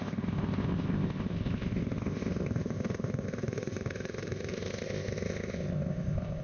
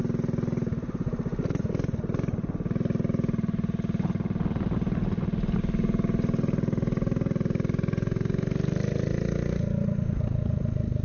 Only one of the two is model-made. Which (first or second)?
first